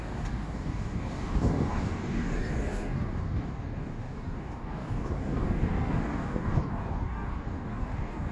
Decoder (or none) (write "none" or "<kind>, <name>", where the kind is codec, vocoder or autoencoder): codec, DAC